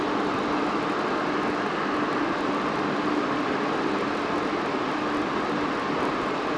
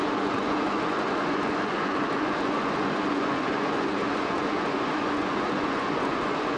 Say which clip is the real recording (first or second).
first